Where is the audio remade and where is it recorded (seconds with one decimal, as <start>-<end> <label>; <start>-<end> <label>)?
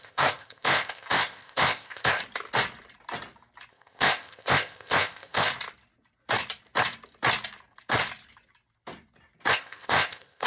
0.0-2.2 remade; 2.2-3.7 recorded; 3.7-5.5 remade; 5.5-9.5 recorded; 9.5-10.5 remade